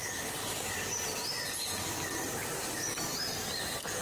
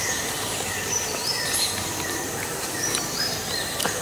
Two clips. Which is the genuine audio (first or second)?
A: first